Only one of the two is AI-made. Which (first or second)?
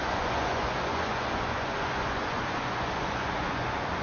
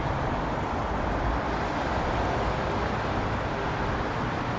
first